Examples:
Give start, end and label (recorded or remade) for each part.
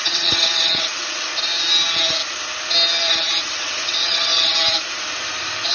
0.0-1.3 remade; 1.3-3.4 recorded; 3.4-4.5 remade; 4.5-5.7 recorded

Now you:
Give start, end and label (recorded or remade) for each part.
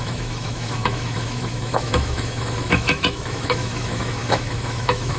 0.0-5.2 remade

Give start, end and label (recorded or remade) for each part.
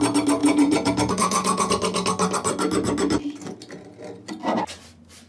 0.0-0.4 recorded; 0.4-1.7 remade; 1.7-5.3 recorded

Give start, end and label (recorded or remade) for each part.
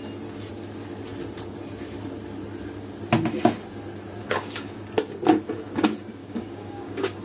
0.0-4.2 recorded; 4.2-4.7 remade; 4.7-6.2 recorded; 6.2-7.2 remade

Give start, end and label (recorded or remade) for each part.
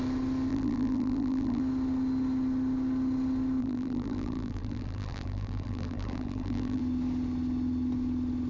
0.0-0.5 recorded; 0.5-1.6 remade; 1.6-3.6 recorded; 3.6-6.8 remade; 6.8-8.5 recorded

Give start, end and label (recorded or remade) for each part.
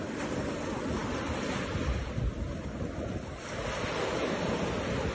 0.0-5.1 recorded